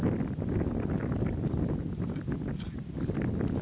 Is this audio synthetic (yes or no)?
no